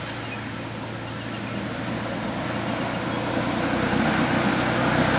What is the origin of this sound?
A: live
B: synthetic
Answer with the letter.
A